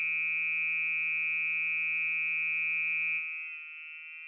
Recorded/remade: recorded